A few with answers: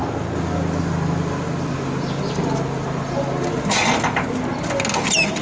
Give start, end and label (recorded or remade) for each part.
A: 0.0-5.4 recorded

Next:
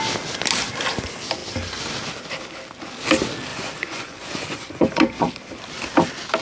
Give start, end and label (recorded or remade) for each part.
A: 0.0-3.5 recorded; 3.5-5.3 remade; 5.3-6.4 recorded

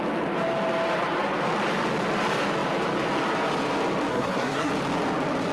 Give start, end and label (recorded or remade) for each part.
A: 0.0-4.1 recorded; 4.1-4.7 remade; 4.7-5.5 recorded

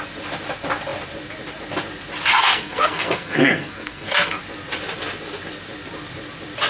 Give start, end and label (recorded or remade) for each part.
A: 0.0-2.3 recorded; 2.3-4.4 remade; 4.4-6.7 recorded

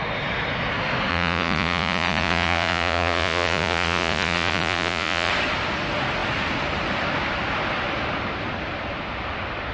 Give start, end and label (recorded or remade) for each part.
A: 0.0-1.1 recorded; 1.1-5.3 remade; 5.3-9.7 recorded